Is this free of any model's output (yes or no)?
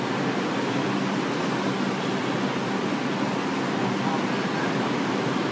yes